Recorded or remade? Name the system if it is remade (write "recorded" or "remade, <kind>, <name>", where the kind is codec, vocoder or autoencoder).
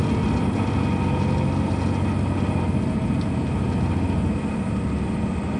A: recorded